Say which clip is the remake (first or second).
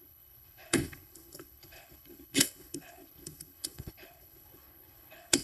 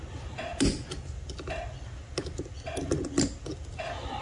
first